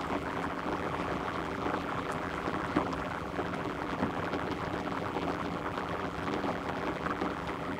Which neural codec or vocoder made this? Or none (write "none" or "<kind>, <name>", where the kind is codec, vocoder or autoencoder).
vocoder, BigVGAN v2